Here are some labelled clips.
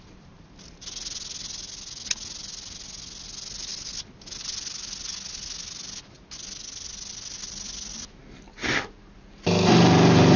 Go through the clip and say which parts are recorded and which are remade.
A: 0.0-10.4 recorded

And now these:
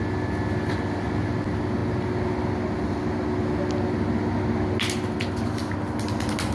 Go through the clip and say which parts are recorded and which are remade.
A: 0.0-6.5 recorded